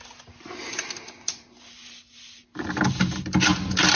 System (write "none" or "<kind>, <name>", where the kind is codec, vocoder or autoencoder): none